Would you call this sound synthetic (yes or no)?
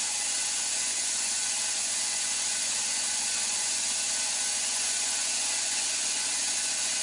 yes